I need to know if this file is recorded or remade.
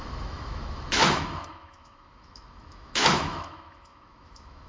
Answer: remade